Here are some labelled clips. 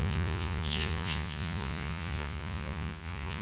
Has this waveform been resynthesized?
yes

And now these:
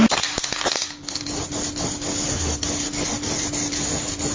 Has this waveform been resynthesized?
no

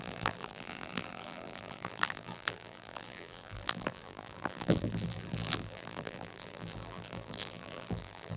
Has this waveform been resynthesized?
yes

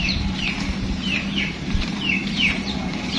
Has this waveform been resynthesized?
yes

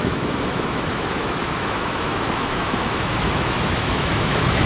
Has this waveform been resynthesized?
yes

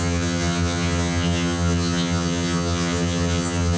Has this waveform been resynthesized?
yes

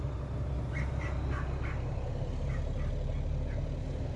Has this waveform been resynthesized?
no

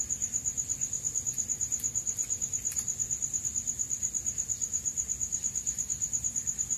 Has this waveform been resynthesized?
no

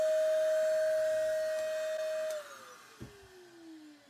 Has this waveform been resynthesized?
no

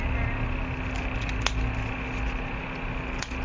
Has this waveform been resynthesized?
no